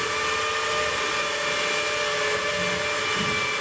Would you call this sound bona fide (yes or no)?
yes